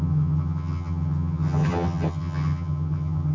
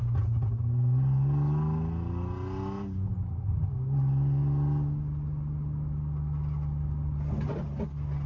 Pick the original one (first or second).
second